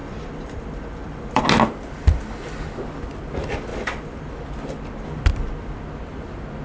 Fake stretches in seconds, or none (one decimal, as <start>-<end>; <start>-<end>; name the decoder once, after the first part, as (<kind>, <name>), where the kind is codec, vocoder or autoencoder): 0.0-1.4 (vocoder, BigVGAN v2); 3.7-4.3